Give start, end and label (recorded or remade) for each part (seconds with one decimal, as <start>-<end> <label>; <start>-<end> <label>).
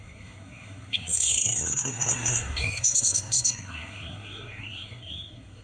0.0-5.6 remade